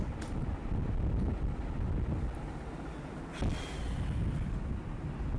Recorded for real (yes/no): yes